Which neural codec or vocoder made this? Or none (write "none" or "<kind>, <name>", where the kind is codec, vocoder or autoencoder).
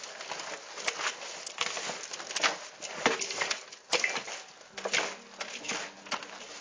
none